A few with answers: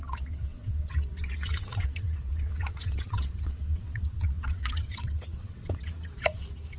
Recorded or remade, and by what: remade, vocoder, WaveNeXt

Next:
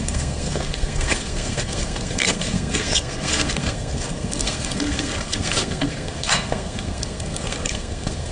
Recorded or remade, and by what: remade, codec, SNAC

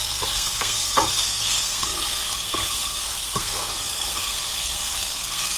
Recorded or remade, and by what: remade, codec, SNAC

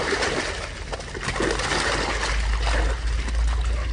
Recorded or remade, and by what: recorded